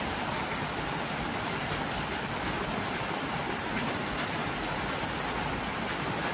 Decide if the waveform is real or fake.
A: real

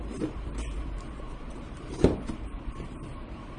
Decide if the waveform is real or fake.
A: fake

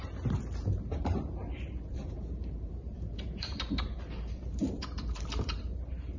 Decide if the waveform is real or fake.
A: fake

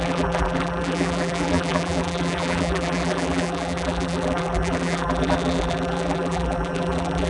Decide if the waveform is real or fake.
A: fake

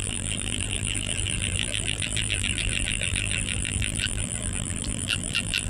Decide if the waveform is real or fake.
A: fake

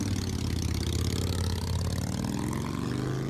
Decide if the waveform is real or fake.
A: real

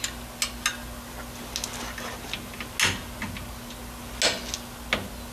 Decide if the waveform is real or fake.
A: real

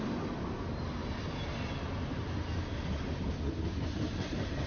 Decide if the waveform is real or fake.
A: real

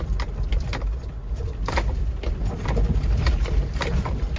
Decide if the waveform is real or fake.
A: real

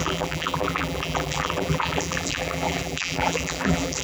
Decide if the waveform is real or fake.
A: fake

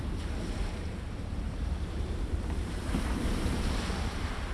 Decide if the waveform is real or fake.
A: fake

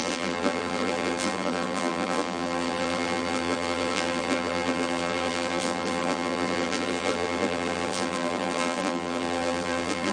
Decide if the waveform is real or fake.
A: fake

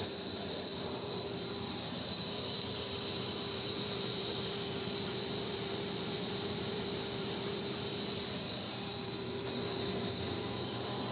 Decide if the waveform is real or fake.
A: fake